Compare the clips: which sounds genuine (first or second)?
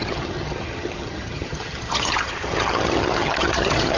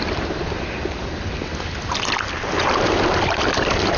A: second